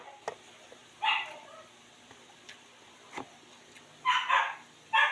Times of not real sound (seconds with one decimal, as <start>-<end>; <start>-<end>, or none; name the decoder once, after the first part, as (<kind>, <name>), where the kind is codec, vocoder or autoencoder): 0.8-3.5 (vocoder, BigVGAN v2)

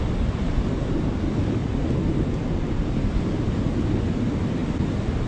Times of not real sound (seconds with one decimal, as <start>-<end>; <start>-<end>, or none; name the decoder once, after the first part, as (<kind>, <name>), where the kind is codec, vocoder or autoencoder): none

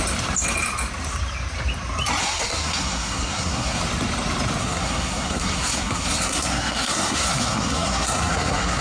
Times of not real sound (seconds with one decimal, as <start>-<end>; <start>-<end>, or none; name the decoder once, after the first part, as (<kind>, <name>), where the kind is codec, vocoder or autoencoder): 2.2-3.8 (codec, SNAC); 4.6-8.8

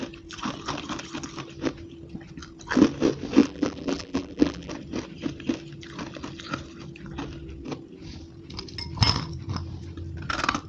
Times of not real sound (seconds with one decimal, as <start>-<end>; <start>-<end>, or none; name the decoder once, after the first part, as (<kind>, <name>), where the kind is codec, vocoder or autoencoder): 3.4-4.7 (vocoder, BigVGAN v2)

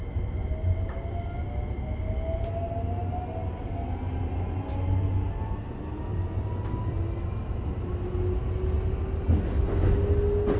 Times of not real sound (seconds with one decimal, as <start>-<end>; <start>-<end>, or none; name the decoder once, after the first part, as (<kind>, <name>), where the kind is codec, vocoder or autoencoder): none

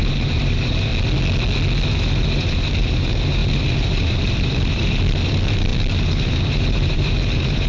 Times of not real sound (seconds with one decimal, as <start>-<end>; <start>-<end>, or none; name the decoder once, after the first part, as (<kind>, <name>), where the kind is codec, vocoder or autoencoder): 0.0-0.9 (vocoder, BigVGAN v2); 1.9-7.7

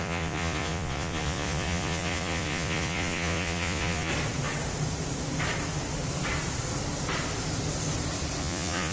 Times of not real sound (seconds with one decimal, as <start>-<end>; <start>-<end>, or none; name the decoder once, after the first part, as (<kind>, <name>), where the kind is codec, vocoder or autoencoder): 0.0-4.1 (vocoder, Vocos); 8.4-8.9

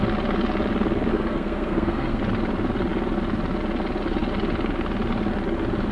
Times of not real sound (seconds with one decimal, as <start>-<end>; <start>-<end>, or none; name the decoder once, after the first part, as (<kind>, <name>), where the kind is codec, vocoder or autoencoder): 1.1-2.2 (codec, SNAC)